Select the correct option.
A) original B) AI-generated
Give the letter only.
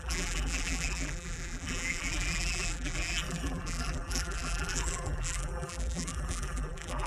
B